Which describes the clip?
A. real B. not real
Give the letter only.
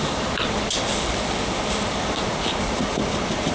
A